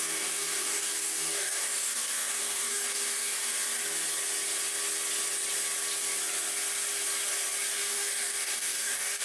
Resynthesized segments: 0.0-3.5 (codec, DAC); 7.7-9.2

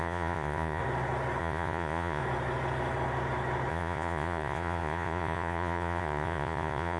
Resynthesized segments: 0.0-0.8 (vocoder, Vocos); 1.4-2.2; 3.7-7.0

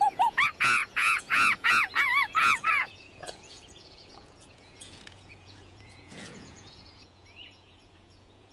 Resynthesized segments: 0.0-8.5 (vocoder, Vocos)

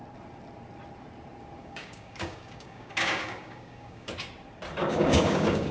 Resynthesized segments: 1.6-4.3 (codec, DAC); 4.8-5.7

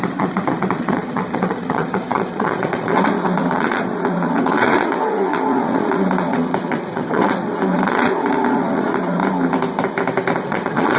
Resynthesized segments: 0.0-9.2 (vocoder, Vocos); 10.3-11.0

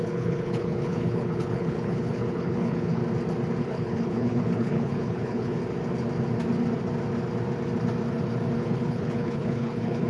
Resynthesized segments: 0.0-3.0 (codec, HILCodec); 3.6-5.6; 8.6-10.1